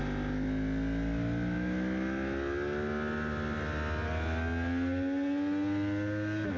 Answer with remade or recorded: recorded